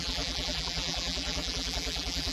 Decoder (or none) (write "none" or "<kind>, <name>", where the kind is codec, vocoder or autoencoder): vocoder, BigVGAN v2